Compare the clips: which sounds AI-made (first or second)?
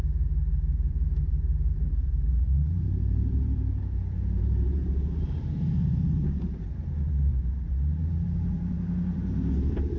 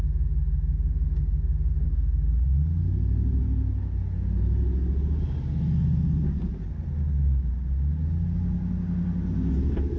first